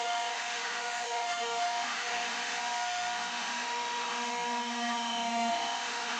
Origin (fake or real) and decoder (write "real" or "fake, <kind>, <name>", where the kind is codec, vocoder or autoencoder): fake, autoencoder, DAC-VAE